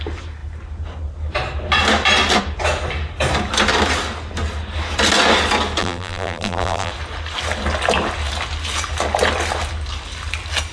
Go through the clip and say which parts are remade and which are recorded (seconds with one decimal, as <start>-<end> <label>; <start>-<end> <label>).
0.0-5.8 recorded; 5.8-6.9 remade; 6.9-10.7 recorded